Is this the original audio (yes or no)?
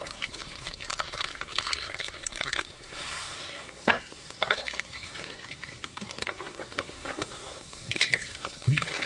no